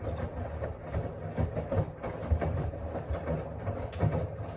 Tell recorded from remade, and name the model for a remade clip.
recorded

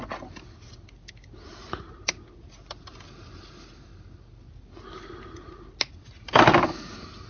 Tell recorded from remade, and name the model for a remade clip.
recorded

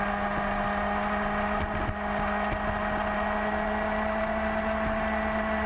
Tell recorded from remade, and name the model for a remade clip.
recorded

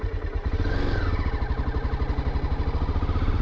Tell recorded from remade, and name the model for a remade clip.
recorded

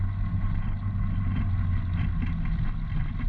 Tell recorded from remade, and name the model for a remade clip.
recorded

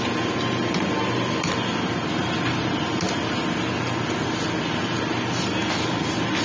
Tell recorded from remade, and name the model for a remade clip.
recorded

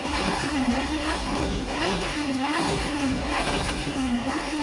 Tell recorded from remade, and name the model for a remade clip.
remade, codec, SNAC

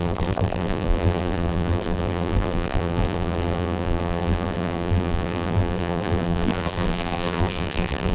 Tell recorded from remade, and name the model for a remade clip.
remade, vocoder, BigVGAN v2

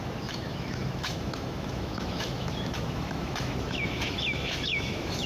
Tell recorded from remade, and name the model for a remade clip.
remade, autoencoder, DAC-VAE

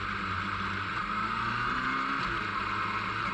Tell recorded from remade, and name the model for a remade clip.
recorded